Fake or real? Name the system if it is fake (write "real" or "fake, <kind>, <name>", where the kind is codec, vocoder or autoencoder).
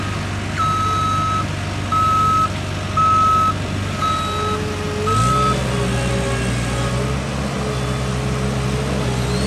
real